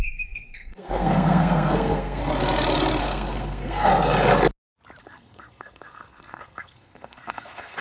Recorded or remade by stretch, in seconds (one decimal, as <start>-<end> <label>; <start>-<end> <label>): 0.0-2.2 remade; 2.2-3.0 recorded; 3.0-3.9 remade; 3.9-5.0 recorded; 5.0-7.8 remade

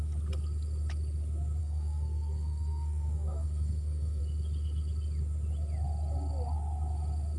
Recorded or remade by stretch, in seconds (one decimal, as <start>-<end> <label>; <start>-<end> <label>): 0.0-1.6 recorded; 1.6-4.2 remade; 4.2-7.4 recorded

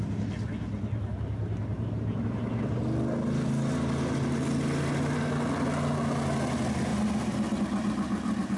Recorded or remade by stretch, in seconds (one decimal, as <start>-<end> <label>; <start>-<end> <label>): 0.0-8.6 recorded

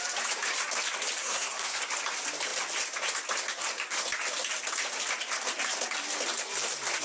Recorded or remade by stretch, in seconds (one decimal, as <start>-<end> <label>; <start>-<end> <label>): 0.0-1.2 recorded; 1.2-1.8 remade; 1.8-7.0 recorded

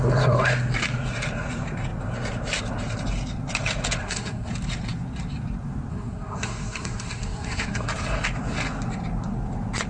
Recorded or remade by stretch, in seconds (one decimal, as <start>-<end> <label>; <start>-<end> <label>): 0.0-4.0 recorded; 4.0-4.5 remade; 4.5-5.9 recorded; 5.9-7.8 remade; 7.8-9.9 recorded